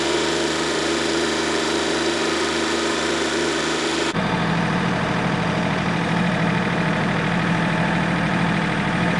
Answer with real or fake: fake